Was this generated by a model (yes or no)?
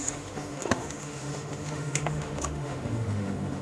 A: yes